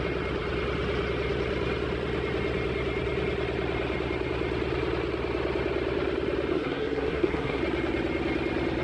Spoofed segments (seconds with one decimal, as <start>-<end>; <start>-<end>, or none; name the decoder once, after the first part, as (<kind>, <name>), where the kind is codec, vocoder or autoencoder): 6.5-7.6 (codec, SNAC)